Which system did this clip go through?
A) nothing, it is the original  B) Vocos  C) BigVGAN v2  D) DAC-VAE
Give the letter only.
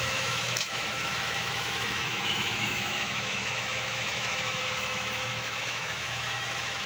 D